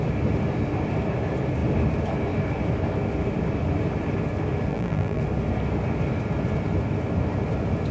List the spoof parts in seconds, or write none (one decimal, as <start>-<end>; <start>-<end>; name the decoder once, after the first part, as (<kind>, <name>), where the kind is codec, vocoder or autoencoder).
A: 4.7-5.2 (vocoder, BigVGAN v2)